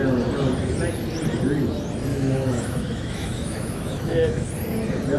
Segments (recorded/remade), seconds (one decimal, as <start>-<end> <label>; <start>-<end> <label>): 0.0-2.1 recorded; 2.1-4.5 remade; 4.5-5.2 recorded